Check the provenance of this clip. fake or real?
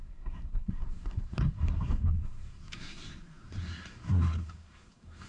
fake